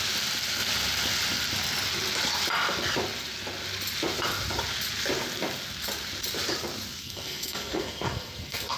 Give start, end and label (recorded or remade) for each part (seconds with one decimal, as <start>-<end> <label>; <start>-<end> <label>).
0.0-7.0 recorded; 7.0-8.8 remade

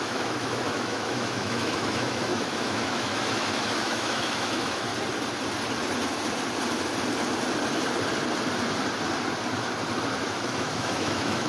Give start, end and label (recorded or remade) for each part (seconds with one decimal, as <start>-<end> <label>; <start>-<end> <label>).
0.0-4.9 remade; 4.9-10.2 recorded; 10.2-11.5 remade

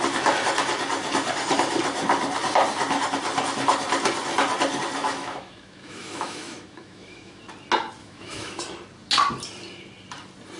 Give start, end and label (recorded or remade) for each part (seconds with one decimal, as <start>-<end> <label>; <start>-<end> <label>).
0.0-5.0 recorded; 5.0-7.4 remade; 7.4-8.0 recorded; 8.0-8.6 remade; 8.6-10.6 recorded